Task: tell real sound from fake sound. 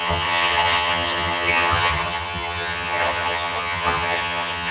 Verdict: fake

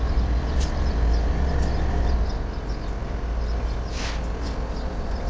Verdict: real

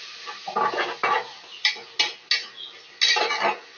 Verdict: real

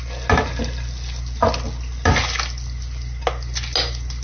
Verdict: real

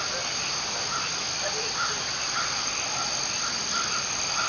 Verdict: real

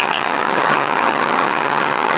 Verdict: fake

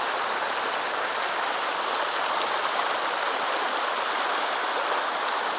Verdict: real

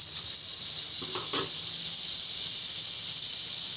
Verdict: real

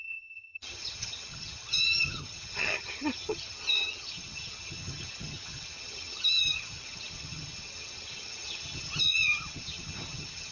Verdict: fake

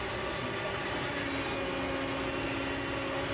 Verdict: real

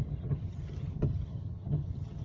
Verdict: fake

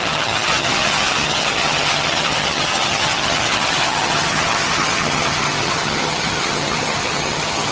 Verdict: fake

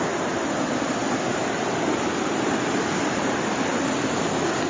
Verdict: real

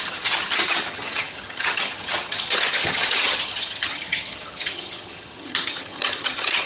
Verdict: fake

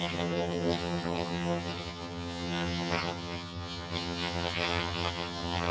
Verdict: fake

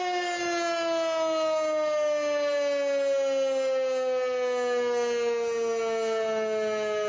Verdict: real